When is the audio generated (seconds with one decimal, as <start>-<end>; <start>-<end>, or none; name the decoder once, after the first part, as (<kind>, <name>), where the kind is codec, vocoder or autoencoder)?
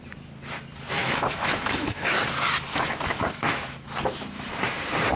1.0-2.2 (autoencoder, DAC-VAE); 2.7-4.5